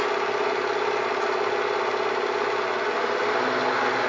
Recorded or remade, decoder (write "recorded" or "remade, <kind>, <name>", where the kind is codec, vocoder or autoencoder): recorded